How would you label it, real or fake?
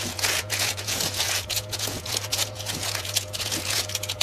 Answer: fake